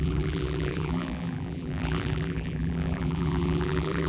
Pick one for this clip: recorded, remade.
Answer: remade